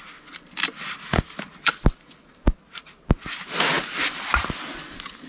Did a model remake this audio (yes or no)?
no